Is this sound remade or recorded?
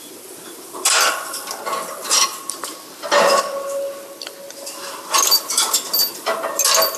recorded